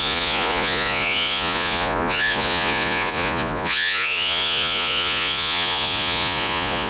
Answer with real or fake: fake